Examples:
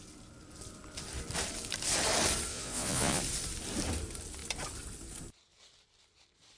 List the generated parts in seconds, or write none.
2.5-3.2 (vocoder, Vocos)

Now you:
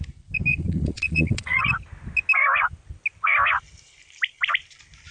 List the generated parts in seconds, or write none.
0.5-1.6 (vocoder, Vocos)

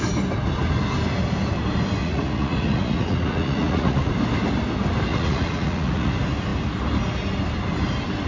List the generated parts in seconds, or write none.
2.0-4.1 (vocoder, Vocos); 5.1-6.1

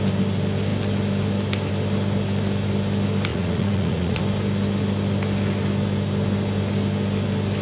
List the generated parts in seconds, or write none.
3.3-4.2 (vocoder, Vocos)